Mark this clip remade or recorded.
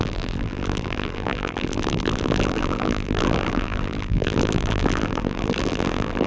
remade